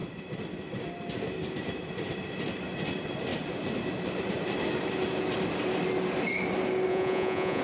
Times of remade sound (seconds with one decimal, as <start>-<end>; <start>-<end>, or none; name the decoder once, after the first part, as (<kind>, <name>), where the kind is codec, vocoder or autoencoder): 6.9-7.6 (vocoder, Vocos)